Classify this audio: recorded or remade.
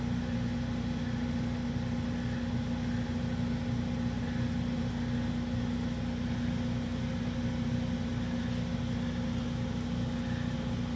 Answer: recorded